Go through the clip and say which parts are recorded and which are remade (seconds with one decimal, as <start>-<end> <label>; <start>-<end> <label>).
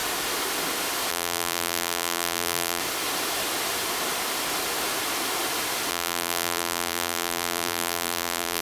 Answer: 0.0-1.1 recorded; 1.1-2.8 remade; 2.8-5.9 recorded; 5.9-8.6 remade